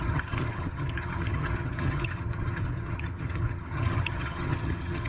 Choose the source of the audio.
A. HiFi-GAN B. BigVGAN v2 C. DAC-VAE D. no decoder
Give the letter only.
A